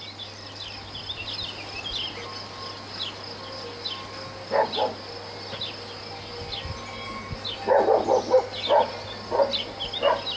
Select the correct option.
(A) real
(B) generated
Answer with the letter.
A